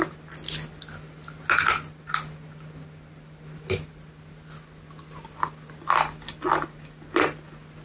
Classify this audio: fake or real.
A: real